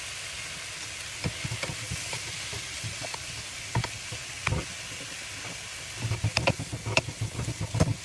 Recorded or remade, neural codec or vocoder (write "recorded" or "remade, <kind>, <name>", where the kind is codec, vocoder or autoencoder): recorded